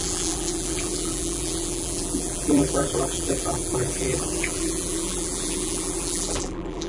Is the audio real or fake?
fake